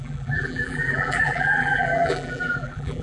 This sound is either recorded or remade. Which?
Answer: remade